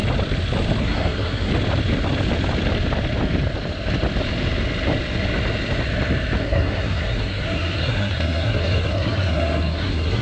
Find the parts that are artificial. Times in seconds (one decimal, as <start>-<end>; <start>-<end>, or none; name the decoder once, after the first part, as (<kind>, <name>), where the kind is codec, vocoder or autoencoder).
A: 0.8-1.5 (codec, SNAC); 6.4-10.2